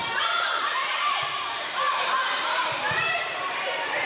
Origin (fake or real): fake